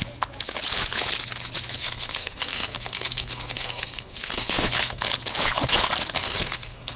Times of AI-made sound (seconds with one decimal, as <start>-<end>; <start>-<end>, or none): 1.8-5.1; 6.2-7.0